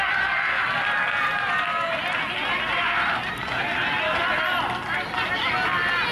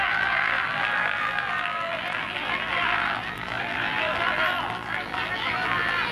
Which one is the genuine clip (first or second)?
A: first